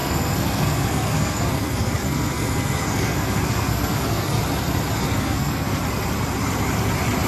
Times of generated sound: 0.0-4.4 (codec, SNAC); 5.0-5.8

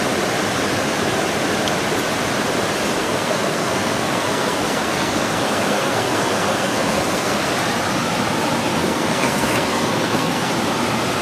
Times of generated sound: 3.0-7.5 (codec, SNAC); 8.8-10.5

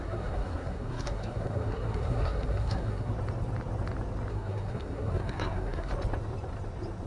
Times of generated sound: 0.0-3.1 (codec, SNAC); 4.3-5.9

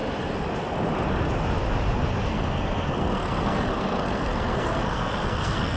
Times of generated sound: 2.2-5.8 (codec, SNAC)

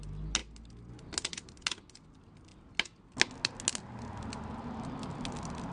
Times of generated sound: none

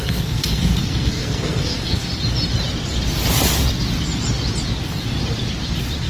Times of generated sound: 0.0-2.1 (codec, SNAC)

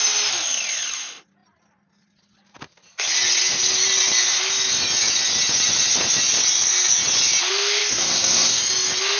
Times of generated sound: 7.9-8.6 (codec, SNAC)